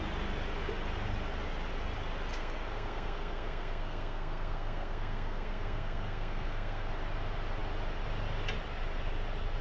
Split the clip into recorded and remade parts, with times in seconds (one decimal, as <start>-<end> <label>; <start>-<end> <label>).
0.0-2.3 recorded; 2.3-6.9 remade; 6.9-9.6 recorded